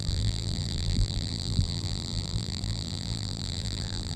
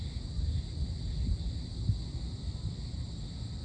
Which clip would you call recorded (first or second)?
second